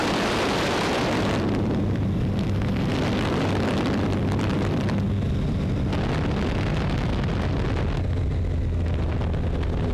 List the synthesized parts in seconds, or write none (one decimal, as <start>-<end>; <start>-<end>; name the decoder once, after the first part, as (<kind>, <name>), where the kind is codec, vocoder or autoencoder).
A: 0.0-5.0 (vocoder, BigVGAN v2)